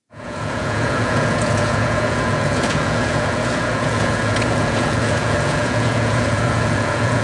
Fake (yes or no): yes